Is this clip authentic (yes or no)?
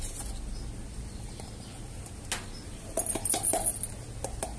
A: yes